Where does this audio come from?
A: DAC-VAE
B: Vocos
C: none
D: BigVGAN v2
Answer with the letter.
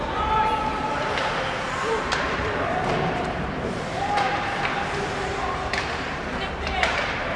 D